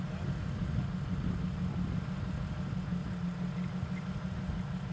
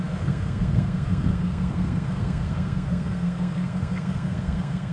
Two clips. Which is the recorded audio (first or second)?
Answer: first